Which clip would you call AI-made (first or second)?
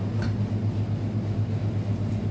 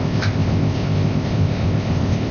second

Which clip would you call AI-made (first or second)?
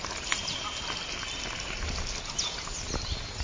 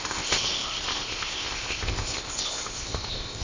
second